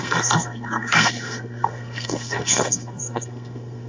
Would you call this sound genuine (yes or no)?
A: no